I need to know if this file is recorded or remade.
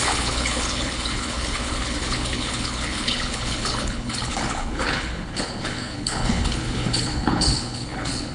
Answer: remade